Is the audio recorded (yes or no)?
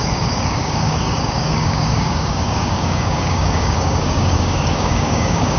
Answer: no